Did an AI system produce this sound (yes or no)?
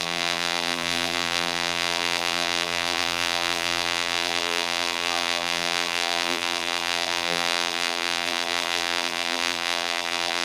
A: yes